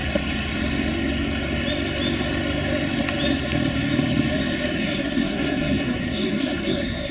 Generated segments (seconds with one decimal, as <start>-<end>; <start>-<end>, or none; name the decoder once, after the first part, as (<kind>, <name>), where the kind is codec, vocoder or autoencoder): 4.8-7.1 (codec, SNAC)